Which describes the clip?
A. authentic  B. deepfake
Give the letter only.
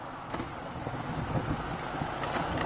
A